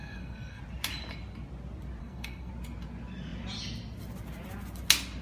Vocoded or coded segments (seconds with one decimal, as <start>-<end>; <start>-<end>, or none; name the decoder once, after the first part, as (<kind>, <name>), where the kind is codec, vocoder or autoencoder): 0.0-0.6 (codec, SNAC); 2.0-2.5